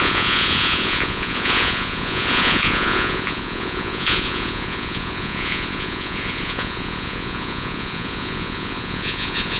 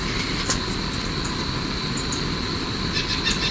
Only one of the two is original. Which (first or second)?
second